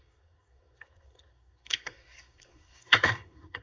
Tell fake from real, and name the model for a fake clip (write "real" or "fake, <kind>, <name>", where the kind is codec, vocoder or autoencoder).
fake, codec, SNAC